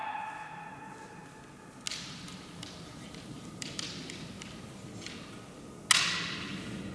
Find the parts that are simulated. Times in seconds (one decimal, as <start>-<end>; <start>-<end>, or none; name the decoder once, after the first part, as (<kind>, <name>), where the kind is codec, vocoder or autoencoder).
1.9-4.9 (vocoder, BigVGAN v2)

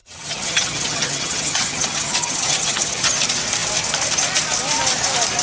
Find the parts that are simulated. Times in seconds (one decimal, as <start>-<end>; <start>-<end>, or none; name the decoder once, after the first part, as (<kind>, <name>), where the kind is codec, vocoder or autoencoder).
0.0-3.2 (vocoder, HiFi-GAN)

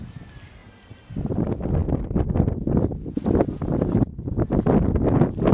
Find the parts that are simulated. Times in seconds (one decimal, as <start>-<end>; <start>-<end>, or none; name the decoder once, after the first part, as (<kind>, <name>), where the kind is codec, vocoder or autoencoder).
none

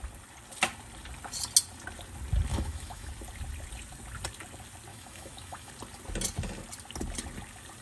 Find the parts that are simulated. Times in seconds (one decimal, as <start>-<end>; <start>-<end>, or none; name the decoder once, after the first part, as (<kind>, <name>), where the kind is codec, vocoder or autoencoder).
2.5-3.1 (autoencoder, DAC-VAE); 4.9-5.7